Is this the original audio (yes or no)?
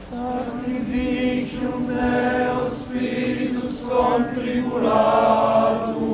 yes